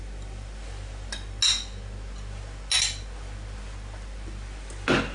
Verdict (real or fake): real